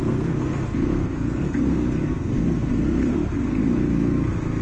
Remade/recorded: remade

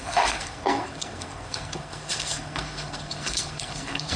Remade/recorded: remade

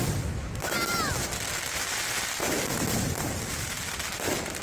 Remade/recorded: recorded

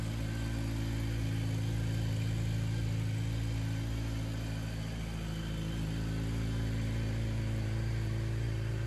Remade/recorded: recorded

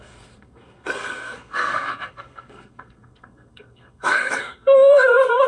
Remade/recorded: remade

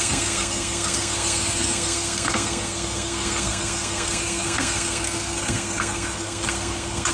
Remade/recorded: remade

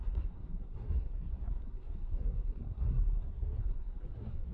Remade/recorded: remade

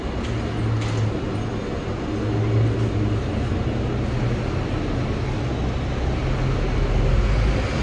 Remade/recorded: recorded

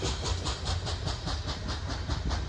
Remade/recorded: recorded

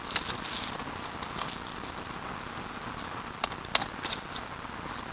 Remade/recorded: recorded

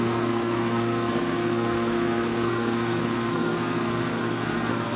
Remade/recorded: remade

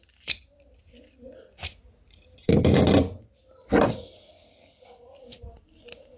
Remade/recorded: recorded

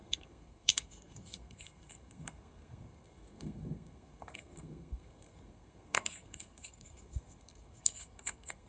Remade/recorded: remade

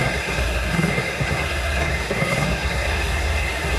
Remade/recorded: remade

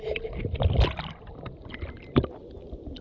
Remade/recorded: recorded